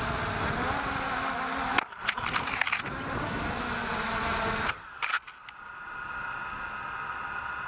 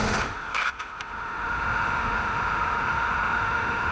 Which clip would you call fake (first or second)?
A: second